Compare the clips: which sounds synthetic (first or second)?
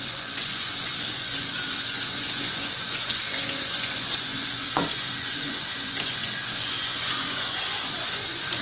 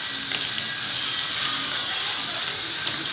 first